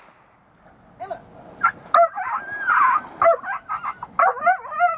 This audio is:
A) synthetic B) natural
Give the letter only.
B